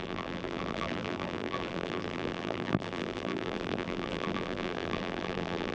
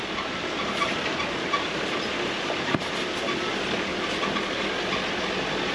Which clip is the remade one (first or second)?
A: first